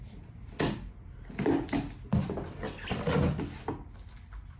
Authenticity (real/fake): real